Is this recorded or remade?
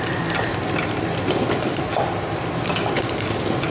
recorded